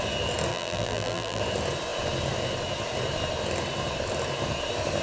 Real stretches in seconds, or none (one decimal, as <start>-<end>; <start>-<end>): 0.0-0.5; 1.4-5.0